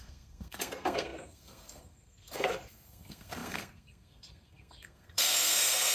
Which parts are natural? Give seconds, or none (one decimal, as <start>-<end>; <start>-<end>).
none